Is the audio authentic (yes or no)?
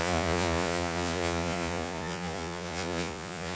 no